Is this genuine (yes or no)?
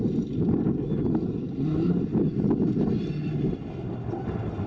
yes